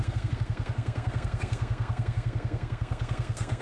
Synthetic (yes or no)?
yes